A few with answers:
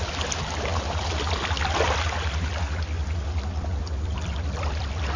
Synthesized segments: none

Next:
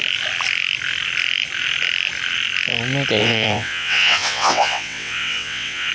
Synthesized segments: 3.2-5.9 (vocoder, WaveNeXt)